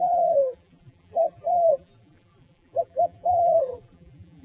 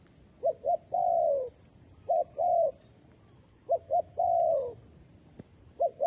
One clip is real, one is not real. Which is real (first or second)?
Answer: second